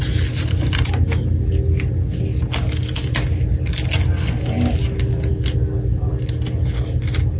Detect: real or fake real